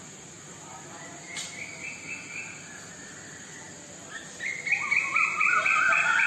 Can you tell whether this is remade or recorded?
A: recorded